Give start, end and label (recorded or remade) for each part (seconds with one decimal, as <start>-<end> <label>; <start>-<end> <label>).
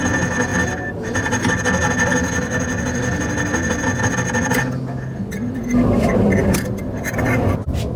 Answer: 0.0-0.5 recorded; 0.5-4.1 remade; 4.1-6.4 recorded; 6.4-7.6 remade; 7.6-8.0 recorded